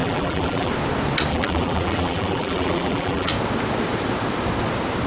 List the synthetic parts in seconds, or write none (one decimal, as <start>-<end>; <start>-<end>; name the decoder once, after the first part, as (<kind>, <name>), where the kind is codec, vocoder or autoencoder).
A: 0.0-0.7 (vocoder, BigVGAN v2); 1.3-3.3